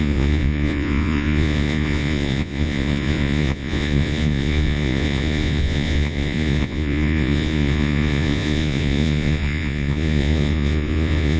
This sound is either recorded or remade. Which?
remade